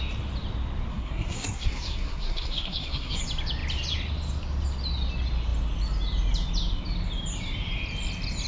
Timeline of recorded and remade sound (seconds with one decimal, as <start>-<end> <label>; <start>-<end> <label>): 0.0-0.9 recorded; 0.9-3.2 remade; 3.2-8.5 recorded